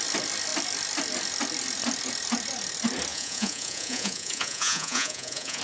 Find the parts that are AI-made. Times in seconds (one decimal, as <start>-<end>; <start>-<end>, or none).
3.1-5.6